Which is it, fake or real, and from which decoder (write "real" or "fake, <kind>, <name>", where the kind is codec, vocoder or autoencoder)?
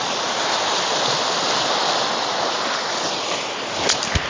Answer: real